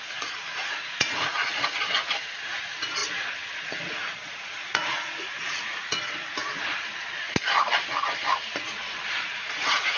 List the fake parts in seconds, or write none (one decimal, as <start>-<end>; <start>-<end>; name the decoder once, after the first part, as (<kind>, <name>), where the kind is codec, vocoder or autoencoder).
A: 0.0-1.3 (vocoder, Vocos); 2.4-3.0; 3.6-6.4; 9.1-10.0